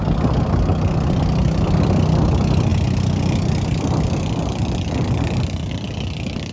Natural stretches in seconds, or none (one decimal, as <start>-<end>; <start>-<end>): 0.0-6.5